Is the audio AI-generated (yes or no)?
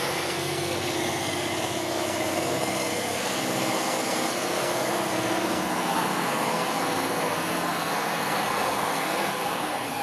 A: yes